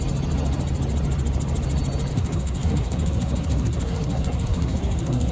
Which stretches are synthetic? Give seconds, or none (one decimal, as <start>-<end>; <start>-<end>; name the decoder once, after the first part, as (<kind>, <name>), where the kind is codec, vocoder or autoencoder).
2.1-5.3 (codec, SNAC)